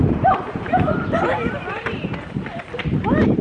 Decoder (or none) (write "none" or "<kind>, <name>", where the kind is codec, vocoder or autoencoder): none